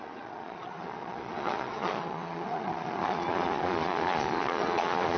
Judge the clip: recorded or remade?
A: remade